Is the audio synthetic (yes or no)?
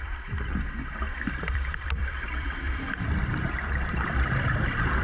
yes